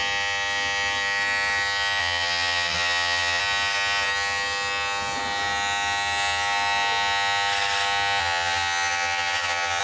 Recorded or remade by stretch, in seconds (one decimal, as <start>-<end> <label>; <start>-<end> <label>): 0.0-2.0 recorded; 2.0-3.4 remade; 3.4-8.2 recorded; 8.2-9.8 remade